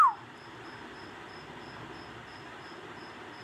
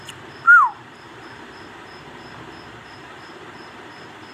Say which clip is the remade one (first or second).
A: second